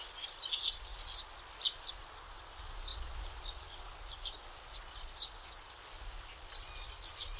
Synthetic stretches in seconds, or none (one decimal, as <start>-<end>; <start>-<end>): none